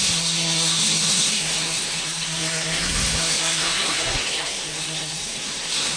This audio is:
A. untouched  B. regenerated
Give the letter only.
B